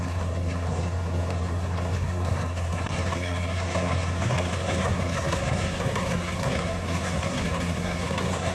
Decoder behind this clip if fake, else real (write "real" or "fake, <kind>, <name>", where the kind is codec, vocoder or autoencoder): fake, codec, SNAC